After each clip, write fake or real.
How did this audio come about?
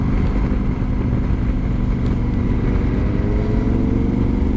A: real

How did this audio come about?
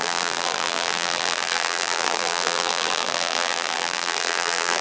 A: fake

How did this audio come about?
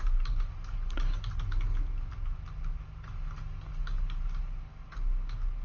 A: real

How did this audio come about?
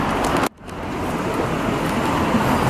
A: real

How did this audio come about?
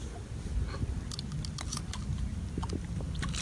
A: real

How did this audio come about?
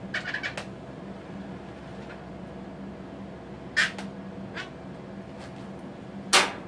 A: real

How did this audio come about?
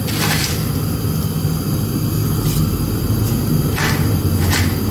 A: real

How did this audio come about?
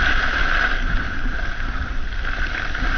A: real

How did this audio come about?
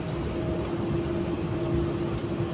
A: real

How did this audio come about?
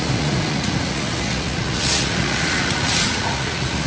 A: fake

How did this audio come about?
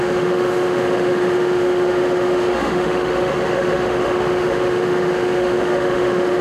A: fake